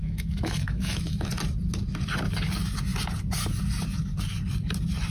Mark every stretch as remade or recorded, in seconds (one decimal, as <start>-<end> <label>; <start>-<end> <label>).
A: 0.0-1.3 remade; 1.3-5.1 recorded